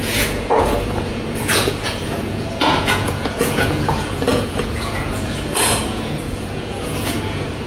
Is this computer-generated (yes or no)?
yes